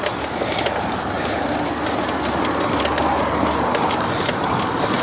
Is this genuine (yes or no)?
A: yes